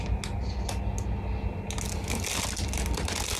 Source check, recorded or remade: recorded